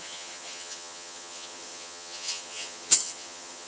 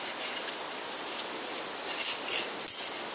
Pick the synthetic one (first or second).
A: first